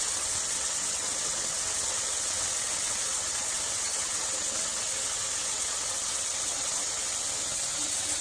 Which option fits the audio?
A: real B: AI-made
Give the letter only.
B